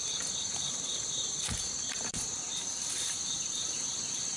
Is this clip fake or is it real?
fake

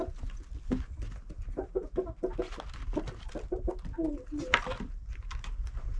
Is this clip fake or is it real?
real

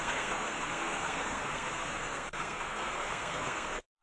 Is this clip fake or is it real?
fake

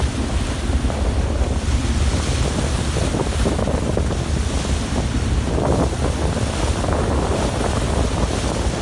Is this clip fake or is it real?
real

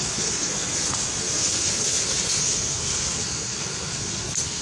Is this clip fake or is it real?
fake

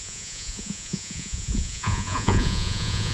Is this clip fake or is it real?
fake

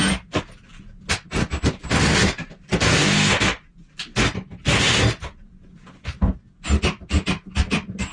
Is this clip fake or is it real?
real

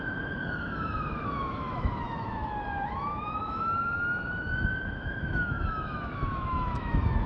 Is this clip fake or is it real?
fake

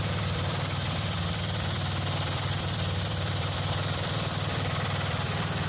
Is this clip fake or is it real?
fake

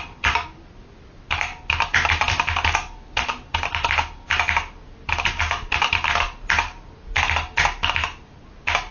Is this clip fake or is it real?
real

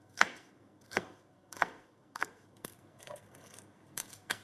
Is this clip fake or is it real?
fake